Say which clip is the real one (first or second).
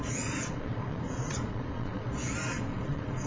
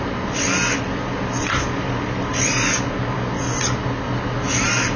second